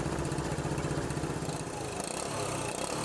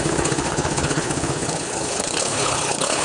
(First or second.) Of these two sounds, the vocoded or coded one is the second